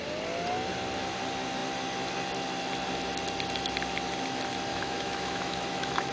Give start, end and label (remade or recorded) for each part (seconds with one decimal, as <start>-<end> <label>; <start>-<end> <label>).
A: 0.0-4.7 recorded; 4.7-6.1 remade

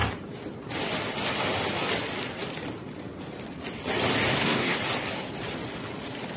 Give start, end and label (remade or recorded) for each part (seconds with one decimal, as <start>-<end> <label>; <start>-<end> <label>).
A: 0.0-4.3 recorded; 4.3-4.8 remade; 4.8-6.4 recorded

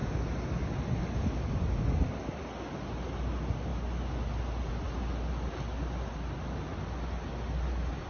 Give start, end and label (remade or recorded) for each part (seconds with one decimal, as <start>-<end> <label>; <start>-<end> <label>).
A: 0.0-8.1 recorded

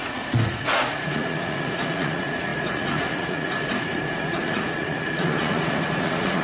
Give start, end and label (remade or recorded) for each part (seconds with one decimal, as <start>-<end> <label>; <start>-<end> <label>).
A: 0.0-6.4 remade

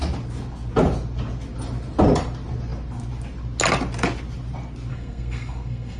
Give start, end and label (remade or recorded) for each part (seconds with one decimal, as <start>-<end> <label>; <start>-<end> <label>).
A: 0.0-4.9 recorded; 4.9-6.0 remade

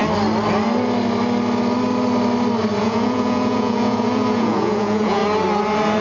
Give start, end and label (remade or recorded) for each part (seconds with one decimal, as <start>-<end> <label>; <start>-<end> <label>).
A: 0.0-2.8 recorded; 2.8-5.2 remade; 5.2-6.0 recorded

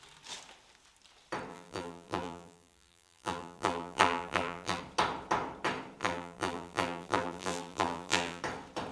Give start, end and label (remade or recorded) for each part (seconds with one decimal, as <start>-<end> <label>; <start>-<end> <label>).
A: 0.0-1.5 recorded; 1.5-4.8 remade; 4.8-6.0 recorded; 6.0-8.4 remade; 8.4-8.9 recorded

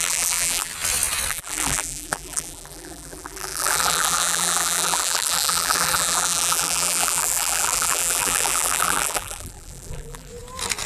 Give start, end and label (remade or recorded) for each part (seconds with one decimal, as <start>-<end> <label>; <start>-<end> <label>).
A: 0.0-0.7 remade; 0.7-1.3 recorded; 1.3-10.3 remade; 10.3-10.9 recorded